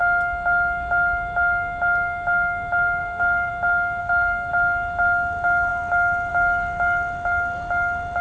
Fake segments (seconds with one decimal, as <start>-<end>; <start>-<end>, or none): 3.0-3.5; 4.0-4.5